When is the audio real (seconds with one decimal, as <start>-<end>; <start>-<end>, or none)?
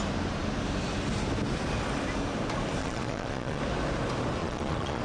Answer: 0.0-2.8; 3.6-4.4